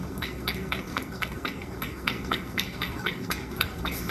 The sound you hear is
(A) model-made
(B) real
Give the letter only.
A